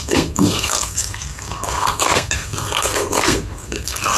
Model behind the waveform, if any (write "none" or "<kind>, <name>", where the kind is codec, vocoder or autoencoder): codec, SNAC